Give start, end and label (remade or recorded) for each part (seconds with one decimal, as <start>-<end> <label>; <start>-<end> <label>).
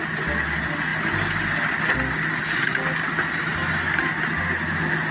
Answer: 0.0-5.1 recorded